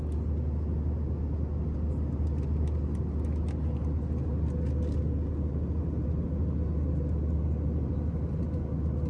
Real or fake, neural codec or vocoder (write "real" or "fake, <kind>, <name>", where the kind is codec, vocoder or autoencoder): real